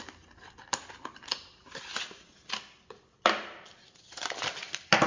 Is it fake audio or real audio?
real